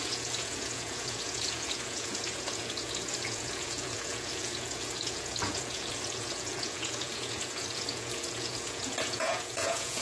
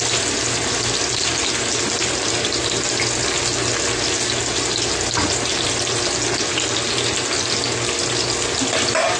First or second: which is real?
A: second